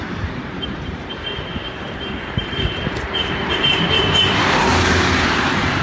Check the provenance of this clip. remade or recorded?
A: remade